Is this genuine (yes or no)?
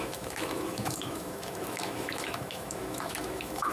no